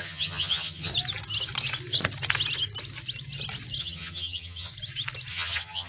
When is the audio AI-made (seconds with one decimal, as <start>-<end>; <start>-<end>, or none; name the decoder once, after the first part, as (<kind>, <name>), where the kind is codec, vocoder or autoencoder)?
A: 0.0-0.9 (vocoder, HiFi-GAN); 3.8-4.7; 5.3-5.9